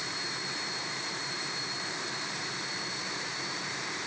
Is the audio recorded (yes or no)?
no